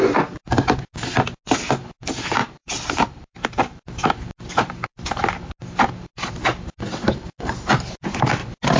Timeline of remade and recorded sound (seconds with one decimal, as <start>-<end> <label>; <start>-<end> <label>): 0.0-2.4 recorded; 2.4-3.8 remade; 3.8-8.8 recorded